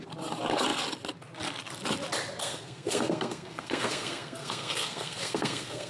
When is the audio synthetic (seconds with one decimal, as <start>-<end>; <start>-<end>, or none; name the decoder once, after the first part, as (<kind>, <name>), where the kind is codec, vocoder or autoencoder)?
2.4-5.9 (codec, SNAC)